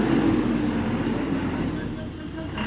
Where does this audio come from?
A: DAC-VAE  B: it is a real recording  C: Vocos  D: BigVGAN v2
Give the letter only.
B